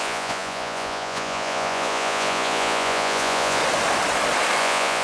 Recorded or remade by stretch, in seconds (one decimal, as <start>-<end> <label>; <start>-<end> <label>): 0.0-3.6 remade; 3.6-4.6 recorded; 4.6-5.0 remade